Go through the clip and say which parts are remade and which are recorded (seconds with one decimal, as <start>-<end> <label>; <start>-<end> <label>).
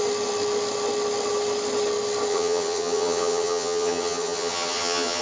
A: 0.0-2.3 recorded; 2.3-5.2 remade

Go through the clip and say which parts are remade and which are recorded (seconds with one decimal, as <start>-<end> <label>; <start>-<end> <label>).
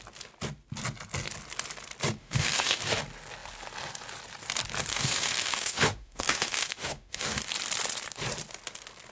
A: 0.0-2.2 recorded; 2.2-2.8 remade; 2.8-4.9 recorded; 4.9-7.5 remade; 7.5-9.1 recorded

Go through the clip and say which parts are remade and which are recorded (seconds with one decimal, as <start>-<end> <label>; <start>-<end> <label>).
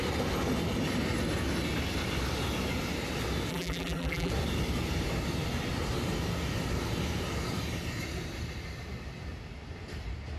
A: 0.0-3.5 recorded; 3.5-4.3 remade; 4.3-10.4 recorded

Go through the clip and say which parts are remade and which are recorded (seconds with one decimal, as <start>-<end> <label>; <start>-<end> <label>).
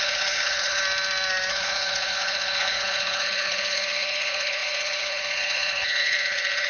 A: 0.0-0.8 remade; 0.8-1.5 recorded; 1.5-6.7 remade